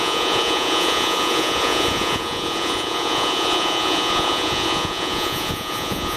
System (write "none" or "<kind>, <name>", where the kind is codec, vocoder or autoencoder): vocoder, Vocos